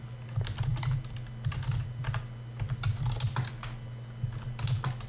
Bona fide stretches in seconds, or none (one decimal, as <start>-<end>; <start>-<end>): 0.0-5.1